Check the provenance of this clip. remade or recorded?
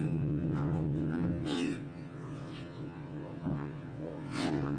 remade